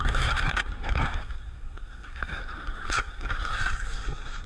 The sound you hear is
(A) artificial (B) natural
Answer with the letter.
A